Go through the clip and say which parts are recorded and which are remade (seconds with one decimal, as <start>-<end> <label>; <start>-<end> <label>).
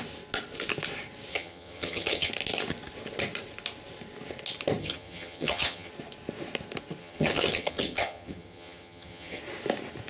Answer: 0.0-1.3 recorded; 1.3-2.3 remade; 2.3-4.8 recorded; 4.8-5.9 remade; 5.9-7.0 recorded; 7.0-9.4 remade; 9.4-10.1 recorded